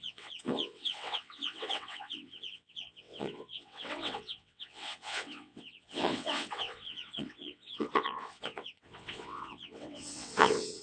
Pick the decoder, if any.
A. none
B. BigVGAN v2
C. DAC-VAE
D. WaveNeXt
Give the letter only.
D